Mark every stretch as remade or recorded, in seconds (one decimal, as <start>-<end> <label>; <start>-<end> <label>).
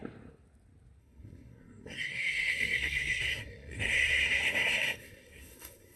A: 0.0-1.0 recorded; 1.0-6.0 remade